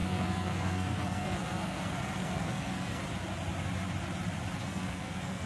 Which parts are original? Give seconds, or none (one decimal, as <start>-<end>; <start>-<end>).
3.0-4.6